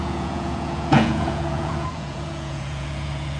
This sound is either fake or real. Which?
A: fake